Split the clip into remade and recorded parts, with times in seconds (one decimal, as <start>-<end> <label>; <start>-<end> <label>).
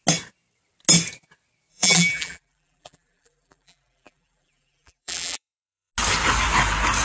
0.0-1.7 recorded; 1.7-5.9 remade; 5.9-7.0 recorded